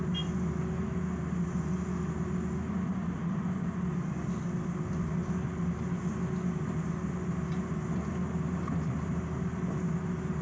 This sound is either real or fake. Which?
real